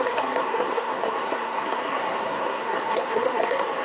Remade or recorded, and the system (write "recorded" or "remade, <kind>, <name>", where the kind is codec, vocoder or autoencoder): remade, codec, SNAC